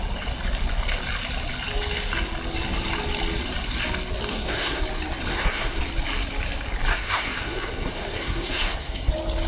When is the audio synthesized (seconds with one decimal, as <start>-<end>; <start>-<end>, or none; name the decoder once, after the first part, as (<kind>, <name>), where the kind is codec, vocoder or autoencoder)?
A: 4.3-4.8 (codec, SNAC); 5.3-5.8; 6.9-9.1

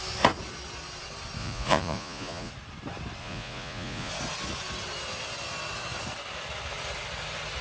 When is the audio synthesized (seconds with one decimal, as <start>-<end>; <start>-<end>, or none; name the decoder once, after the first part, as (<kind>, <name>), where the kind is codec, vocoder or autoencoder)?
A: 1.4-2.5 (vocoder, Vocos); 3.2-4.1